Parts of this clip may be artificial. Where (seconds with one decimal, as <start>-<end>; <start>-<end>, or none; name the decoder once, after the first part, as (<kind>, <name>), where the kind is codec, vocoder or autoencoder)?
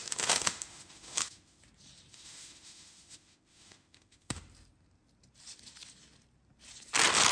0.0-1.6 (autoencoder, DAC-VAE); 2.1-4.4